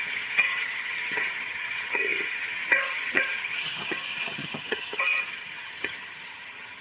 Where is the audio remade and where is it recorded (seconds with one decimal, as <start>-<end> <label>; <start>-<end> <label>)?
0.0-6.8 remade